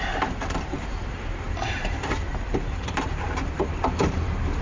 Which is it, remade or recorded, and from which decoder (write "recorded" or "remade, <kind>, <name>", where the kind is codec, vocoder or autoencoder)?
remade, vocoder, BigVGAN v2